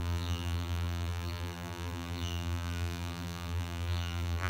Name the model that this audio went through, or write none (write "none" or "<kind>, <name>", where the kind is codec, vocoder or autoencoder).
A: vocoder, BigVGAN v2